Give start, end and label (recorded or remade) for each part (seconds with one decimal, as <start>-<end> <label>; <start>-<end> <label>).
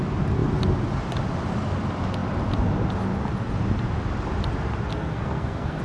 0.0-4.9 recorded; 4.9-5.8 remade